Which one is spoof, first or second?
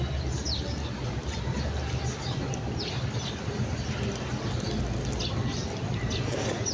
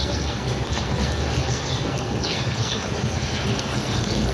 second